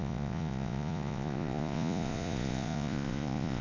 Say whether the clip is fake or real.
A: fake